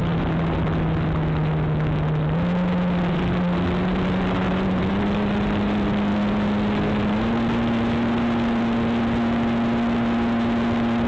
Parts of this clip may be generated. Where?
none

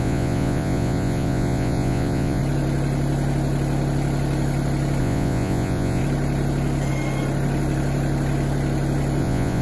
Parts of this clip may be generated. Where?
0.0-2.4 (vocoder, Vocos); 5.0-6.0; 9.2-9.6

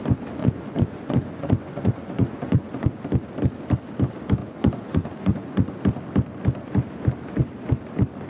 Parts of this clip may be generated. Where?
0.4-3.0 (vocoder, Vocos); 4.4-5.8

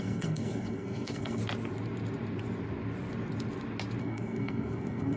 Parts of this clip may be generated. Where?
0.0-1.4 (codec, SNAC); 4.0-5.2

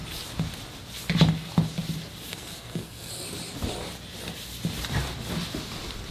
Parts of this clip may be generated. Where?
2.3-3.1 (codec, SNAC)

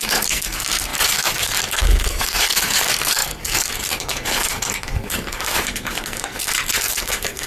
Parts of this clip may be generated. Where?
0.0-7.5 (codec, SNAC)